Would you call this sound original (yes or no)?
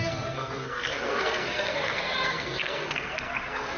no